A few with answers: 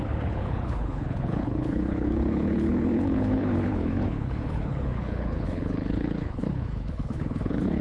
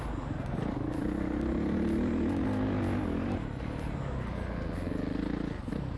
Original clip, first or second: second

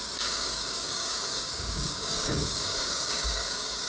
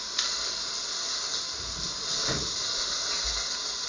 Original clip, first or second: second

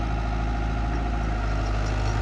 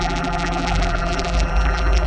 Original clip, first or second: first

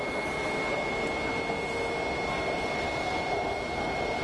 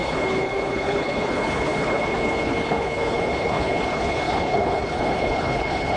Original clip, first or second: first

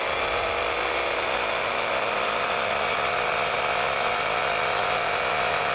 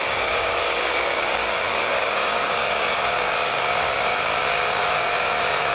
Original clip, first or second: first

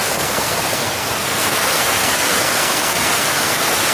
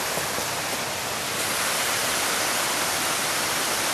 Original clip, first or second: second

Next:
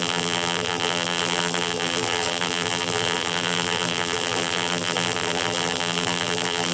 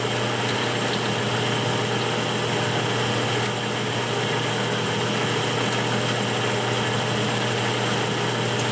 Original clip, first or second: second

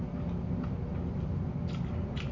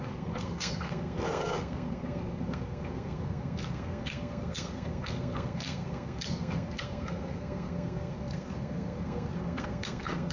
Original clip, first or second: first